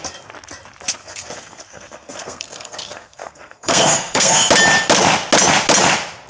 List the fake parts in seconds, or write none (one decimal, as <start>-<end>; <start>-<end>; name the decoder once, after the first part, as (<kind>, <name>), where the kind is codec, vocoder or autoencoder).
1.0-4.5 (codec, SNAC)